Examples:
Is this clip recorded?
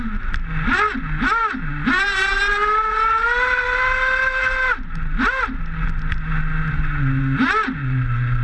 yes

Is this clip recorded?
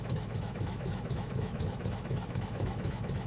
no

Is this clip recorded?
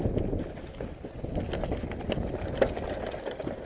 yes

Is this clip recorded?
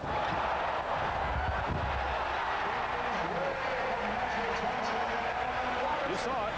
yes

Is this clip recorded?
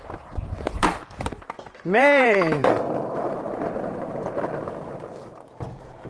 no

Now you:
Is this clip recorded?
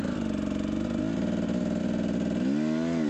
yes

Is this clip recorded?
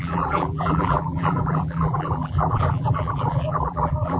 no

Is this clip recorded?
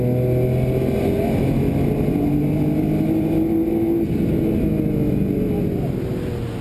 yes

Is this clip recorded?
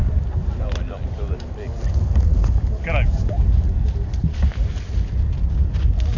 yes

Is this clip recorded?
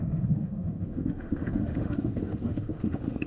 no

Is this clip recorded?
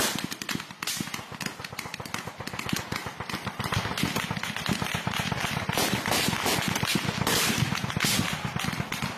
yes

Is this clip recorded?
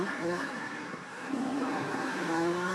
no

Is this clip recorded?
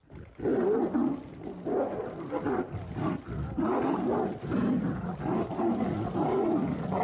yes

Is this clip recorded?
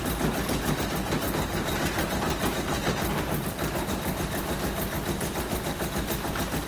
yes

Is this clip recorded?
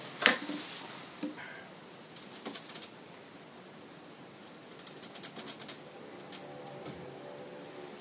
yes